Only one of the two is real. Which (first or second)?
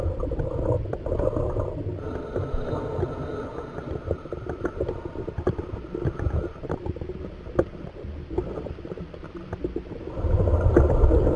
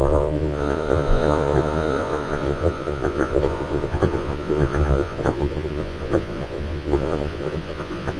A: first